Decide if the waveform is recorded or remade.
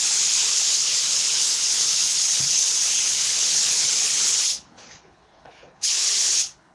remade